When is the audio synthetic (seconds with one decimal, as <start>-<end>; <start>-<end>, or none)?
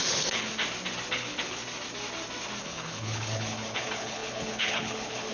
0.0-0.5; 1.1-1.6; 2.6-5.3